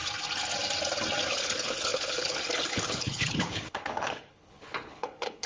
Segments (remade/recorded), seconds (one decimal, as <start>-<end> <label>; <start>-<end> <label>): 0.0-1.3 recorded; 1.3-5.5 remade